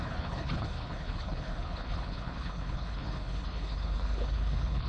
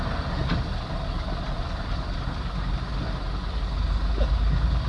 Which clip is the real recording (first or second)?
second